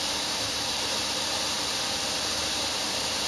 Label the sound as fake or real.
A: fake